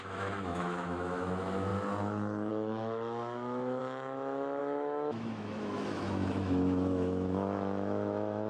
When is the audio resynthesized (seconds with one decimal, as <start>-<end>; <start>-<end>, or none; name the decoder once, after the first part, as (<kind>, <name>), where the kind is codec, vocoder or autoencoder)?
0.0-1.7 (autoencoder, DAC-VAE); 2.5-8.5